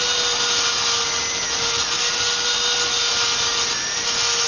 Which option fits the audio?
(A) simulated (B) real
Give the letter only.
B